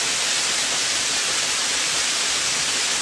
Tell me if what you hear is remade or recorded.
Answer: recorded